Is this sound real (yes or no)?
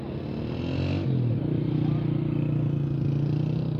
yes